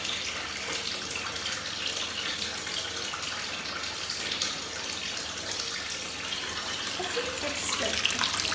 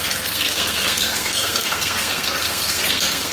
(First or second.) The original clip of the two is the first